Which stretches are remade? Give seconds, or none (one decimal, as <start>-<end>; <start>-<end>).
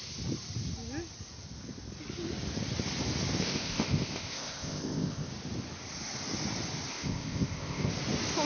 3.4-5.3; 6.9-7.9